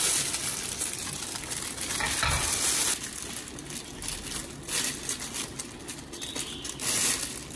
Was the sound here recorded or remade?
recorded